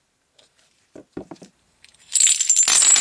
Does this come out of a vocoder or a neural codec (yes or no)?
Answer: yes